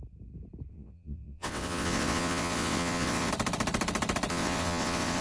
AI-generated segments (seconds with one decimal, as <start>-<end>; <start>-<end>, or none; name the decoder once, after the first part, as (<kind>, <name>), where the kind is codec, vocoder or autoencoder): 0.7-3.3 (vocoder, WaveNeXt); 4.3-5.2